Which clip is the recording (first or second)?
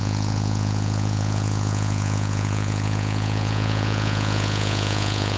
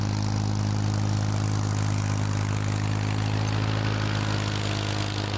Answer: second